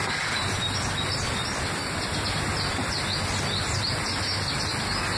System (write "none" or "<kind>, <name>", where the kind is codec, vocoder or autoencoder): none